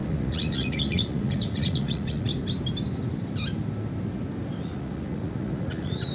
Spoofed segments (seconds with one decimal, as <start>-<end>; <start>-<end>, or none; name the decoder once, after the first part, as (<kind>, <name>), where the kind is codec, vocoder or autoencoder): 0.0-2.3 (vocoder, Vocos); 4.6-6.1